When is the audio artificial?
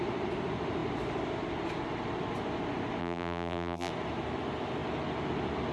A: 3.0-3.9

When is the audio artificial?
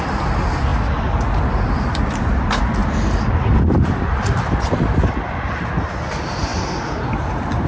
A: 2.8-5.7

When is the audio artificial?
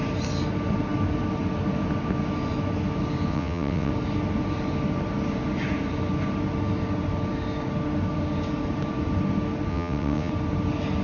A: 3.3-3.9; 9.7-10.3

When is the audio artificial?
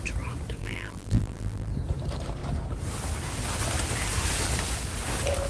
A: 0.6-1.7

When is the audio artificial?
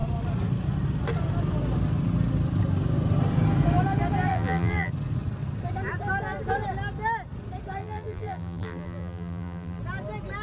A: 4.3-4.9; 7.8-9.8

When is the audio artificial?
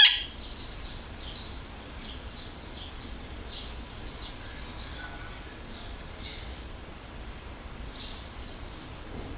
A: 0.0-9.4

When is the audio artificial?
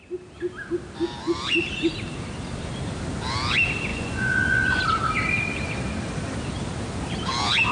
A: 3.9-4.8